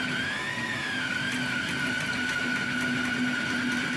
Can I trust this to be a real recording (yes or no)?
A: yes